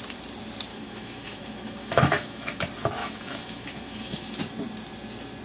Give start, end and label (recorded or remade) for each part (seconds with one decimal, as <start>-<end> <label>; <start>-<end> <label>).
0.0-0.7 recorded; 0.7-2.6 remade; 2.6-3.0 recorded; 3.0-4.4 remade; 4.4-5.4 recorded

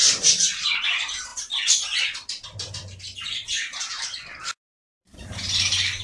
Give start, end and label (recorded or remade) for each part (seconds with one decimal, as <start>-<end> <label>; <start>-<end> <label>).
0.0-6.0 recorded

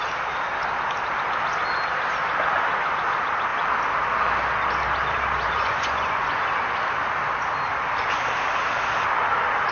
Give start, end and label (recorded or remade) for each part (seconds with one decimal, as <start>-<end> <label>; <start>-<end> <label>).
0.0-5.4 recorded; 5.4-6.4 remade; 6.4-9.7 recorded

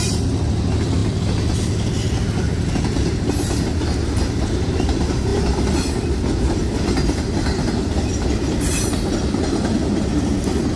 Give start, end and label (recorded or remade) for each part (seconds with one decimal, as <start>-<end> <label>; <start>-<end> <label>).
0.0-8.1 recorded; 8.1-9.1 remade; 9.1-10.8 recorded

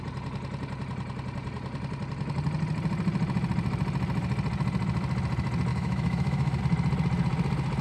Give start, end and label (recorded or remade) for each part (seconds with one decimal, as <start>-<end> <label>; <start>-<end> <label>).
0.0-5.7 recorded; 5.7-6.6 remade; 6.6-7.8 recorded

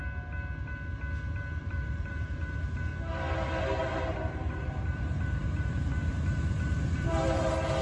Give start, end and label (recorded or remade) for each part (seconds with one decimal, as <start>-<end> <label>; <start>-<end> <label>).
0.0-1.6 recorded; 1.6-2.9 remade; 2.9-3.6 recorded; 3.6-7.8 remade